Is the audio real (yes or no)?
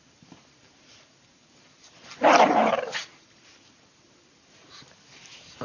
no